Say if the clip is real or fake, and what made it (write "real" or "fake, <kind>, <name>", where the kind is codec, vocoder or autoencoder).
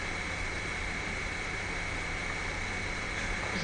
fake, vocoder, BigVGAN v2